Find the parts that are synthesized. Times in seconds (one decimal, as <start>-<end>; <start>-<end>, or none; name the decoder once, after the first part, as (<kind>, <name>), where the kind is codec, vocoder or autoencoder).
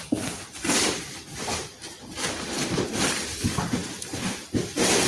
0.0-5.1 (vocoder, BigVGAN v2)